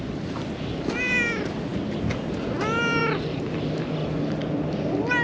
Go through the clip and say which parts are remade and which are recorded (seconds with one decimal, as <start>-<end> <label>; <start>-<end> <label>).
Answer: 0.0-5.2 recorded